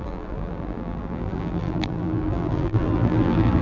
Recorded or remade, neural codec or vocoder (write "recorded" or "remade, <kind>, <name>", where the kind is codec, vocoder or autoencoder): remade, vocoder, BigVGAN v2